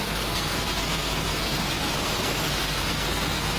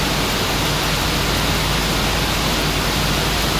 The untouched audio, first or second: second